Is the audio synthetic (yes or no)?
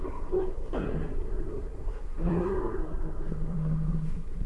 yes